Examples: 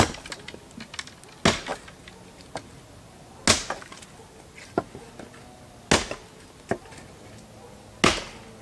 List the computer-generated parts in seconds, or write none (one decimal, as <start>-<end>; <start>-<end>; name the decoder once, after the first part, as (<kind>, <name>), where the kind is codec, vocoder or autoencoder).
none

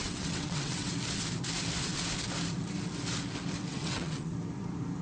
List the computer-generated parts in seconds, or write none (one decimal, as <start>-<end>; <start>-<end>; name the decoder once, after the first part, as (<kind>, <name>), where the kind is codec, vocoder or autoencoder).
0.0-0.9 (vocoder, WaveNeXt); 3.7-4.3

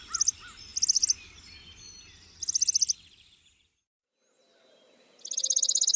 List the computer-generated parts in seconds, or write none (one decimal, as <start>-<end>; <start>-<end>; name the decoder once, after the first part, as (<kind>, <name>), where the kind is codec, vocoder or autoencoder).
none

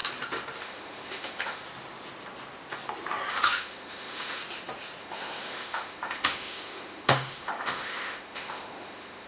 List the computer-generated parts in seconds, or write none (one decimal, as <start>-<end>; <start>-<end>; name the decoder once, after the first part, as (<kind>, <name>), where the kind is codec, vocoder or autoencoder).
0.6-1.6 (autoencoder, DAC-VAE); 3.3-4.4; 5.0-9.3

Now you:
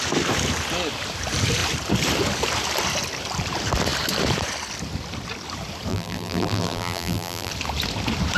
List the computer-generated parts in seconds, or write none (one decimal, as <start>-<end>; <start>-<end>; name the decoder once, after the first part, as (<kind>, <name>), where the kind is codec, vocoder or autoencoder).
5.9-7.5 (vocoder, BigVGAN v2)

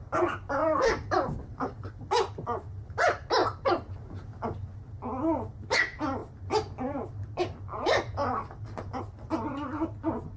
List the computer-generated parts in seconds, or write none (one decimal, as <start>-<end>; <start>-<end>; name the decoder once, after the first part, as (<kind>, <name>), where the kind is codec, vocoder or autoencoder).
0.6-1.9 (vocoder, BigVGAN v2); 3.4-3.9